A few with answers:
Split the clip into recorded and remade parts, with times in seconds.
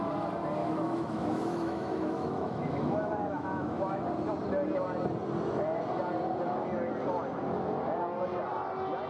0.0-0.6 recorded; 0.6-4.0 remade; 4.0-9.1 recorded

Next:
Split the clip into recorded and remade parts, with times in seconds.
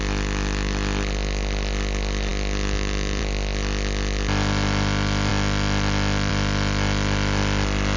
0.0-8.0 recorded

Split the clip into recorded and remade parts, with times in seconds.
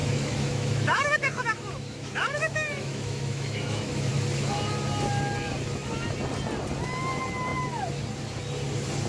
0.0-4.1 remade; 4.1-9.1 recorded